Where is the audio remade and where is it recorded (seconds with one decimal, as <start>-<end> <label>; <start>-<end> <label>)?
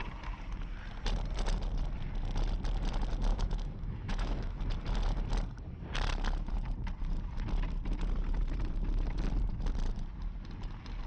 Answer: 0.0-3.3 recorded; 3.3-4.6 remade; 4.6-11.1 recorded